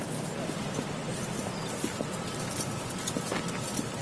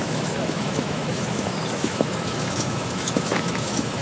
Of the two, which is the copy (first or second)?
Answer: second